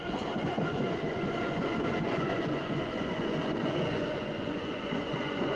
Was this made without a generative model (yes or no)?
no